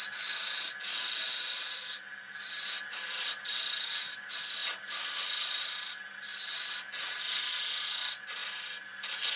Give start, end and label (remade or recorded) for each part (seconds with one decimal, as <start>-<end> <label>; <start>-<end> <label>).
0.0-9.4 recorded